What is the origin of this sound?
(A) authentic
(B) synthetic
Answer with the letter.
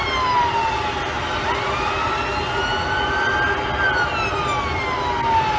A